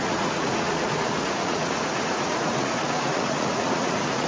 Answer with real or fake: fake